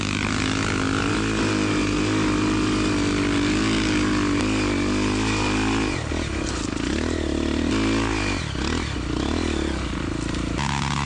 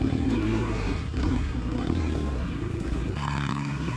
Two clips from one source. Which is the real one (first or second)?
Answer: first